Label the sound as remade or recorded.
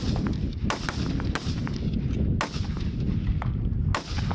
recorded